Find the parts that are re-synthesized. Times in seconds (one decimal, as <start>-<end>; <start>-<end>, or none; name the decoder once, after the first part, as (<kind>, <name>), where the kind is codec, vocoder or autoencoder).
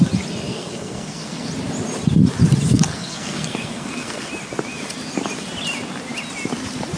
0.5-1.5 (codec, SNAC); 2.7-4.3